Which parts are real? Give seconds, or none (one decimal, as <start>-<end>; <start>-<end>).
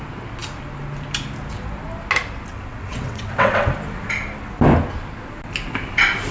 0.0-2.5; 3.7-6.3